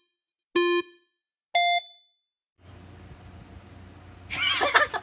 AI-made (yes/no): no